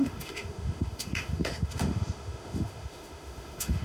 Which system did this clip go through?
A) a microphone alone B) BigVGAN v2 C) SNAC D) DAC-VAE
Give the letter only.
D